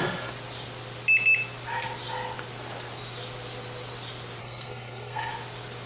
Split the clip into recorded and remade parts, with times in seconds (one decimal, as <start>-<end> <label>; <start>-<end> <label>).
0.0-4.4 recorded; 4.4-5.3 remade; 5.3-5.9 recorded